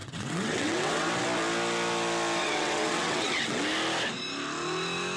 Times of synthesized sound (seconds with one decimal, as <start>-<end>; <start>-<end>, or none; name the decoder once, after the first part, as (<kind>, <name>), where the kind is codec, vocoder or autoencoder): 0.0-1.1 (vocoder, WaveNeXt); 2.4-3.6